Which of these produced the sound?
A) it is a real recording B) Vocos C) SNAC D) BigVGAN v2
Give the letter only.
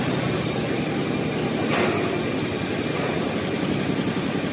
A